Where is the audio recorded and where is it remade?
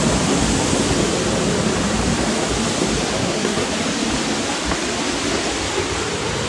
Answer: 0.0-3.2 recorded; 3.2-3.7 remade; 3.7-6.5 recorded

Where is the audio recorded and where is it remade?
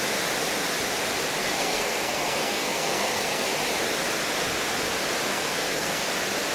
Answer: 0.0-1.4 recorded; 1.4-3.5 remade; 3.5-5.3 recorded; 5.3-6.1 remade; 6.1-6.5 recorded